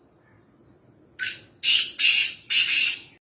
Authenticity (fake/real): real